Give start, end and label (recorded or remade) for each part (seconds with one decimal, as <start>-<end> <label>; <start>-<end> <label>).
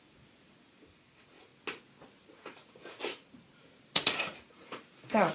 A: 0.0-1.5 remade; 1.5-2.2 recorded; 2.2-5.3 remade